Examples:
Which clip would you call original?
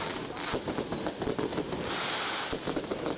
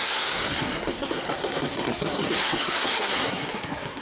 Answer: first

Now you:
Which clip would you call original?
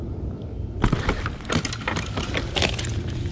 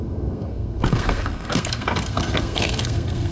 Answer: first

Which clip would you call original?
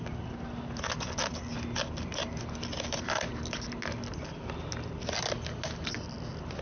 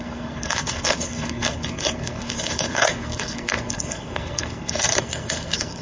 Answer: first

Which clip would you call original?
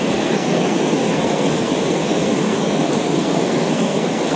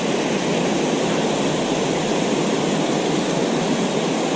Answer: second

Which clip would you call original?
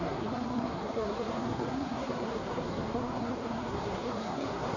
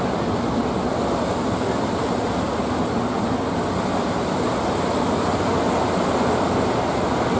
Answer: second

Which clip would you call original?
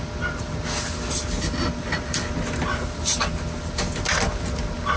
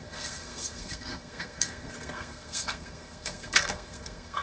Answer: first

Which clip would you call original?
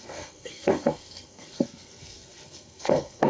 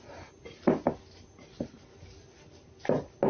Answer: second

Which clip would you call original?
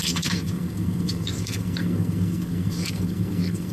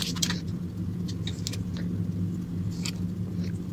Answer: second